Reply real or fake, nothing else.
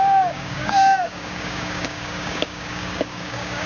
fake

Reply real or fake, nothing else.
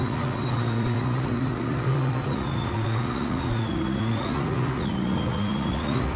fake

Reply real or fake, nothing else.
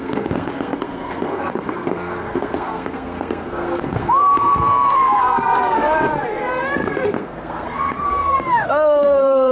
fake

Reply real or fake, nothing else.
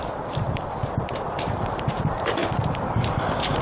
fake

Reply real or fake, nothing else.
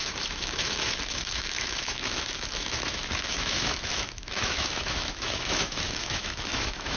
fake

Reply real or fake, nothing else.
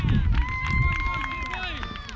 real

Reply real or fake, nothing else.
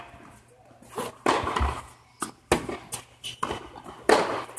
real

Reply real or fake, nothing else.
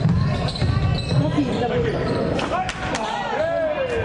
real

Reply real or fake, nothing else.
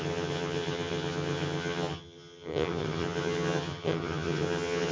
fake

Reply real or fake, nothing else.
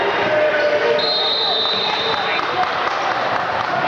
real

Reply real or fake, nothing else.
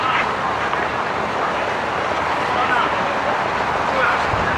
real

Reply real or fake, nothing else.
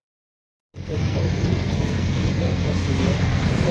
fake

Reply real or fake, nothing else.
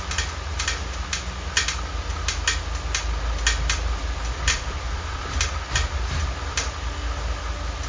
real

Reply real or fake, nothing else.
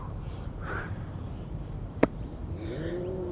fake